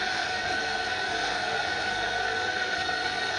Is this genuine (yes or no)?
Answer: no